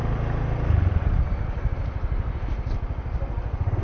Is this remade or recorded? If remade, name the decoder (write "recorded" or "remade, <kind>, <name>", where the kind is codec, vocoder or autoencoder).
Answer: recorded